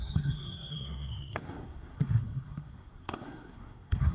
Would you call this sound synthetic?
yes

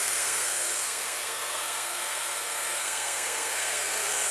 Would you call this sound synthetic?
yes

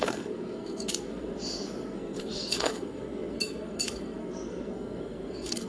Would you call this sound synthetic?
yes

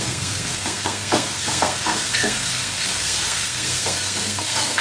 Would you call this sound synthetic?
yes